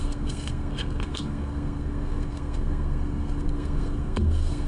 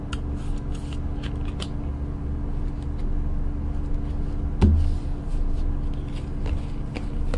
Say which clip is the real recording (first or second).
second